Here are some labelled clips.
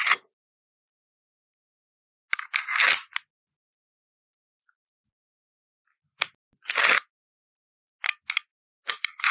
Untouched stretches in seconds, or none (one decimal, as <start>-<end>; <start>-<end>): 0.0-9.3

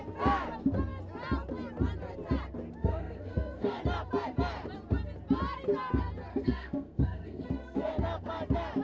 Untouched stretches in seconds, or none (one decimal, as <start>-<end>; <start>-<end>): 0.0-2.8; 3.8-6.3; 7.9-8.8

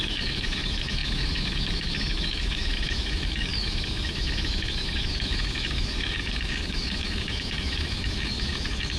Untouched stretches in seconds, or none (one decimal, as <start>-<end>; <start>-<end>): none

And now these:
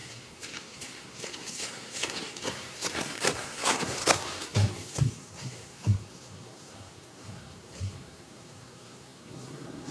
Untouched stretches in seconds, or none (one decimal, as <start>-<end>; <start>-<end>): none